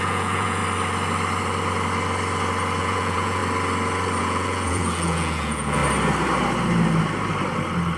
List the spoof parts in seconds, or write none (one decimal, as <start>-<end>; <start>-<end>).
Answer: 0.0-0.6; 2.8-3.4; 4.2-5.8